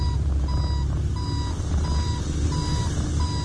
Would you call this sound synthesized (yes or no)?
no